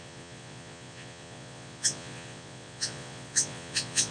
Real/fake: fake